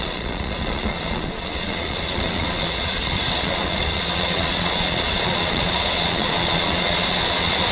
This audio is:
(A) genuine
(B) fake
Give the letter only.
B